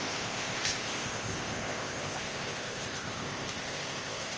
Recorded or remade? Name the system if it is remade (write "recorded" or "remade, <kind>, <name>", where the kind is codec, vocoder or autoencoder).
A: remade, codec, ZipCodec